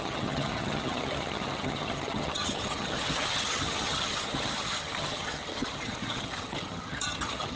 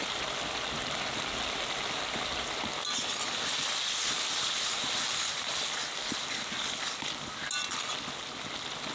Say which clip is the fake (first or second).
first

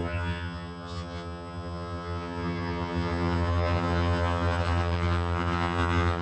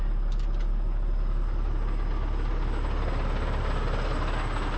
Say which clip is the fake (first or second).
first